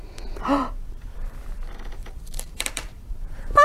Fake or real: fake